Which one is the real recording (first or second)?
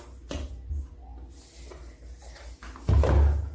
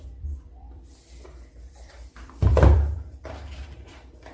first